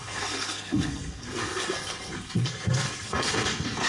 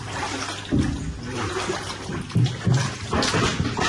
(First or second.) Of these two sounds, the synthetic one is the first